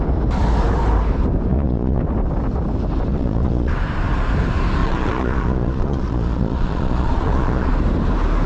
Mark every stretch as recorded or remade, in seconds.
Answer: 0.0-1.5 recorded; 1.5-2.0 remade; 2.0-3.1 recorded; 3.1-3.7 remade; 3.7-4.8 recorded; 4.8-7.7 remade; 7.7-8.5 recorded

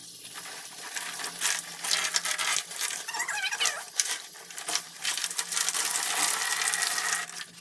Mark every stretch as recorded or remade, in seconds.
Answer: 0.0-2.5 recorded; 2.5-5.2 remade; 5.2-7.6 recorded

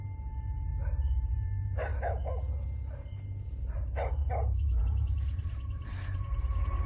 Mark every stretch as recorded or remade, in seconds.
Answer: 0.0-1.9 remade; 1.9-3.6 recorded; 3.6-6.9 remade

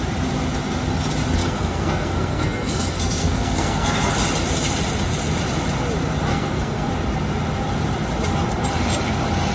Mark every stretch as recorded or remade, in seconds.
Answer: 0.0-1.4 recorded; 1.4-4.1 remade; 4.1-6.3 recorded; 6.3-6.9 remade; 6.9-9.5 recorded

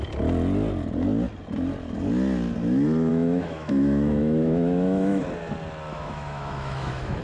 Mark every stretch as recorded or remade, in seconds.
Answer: 0.0-3.1 recorded; 3.1-5.2 remade; 5.2-5.9 recorded; 5.9-7.2 remade

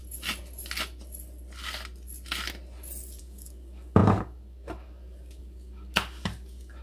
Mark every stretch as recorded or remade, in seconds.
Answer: 0.0-3.2 recorded; 3.2-6.8 remade